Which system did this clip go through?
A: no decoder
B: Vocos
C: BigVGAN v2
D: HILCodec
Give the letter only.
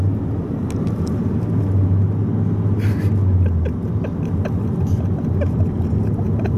A